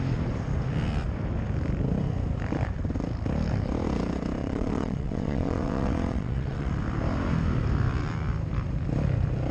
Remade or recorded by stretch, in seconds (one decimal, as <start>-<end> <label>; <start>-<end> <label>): 0.0-4.4 recorded; 4.4-6.7 remade; 6.7-9.5 recorded